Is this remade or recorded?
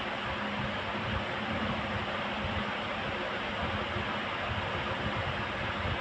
recorded